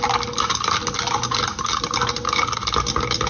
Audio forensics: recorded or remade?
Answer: recorded